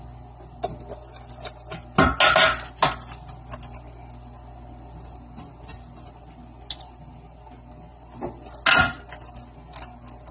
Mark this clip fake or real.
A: real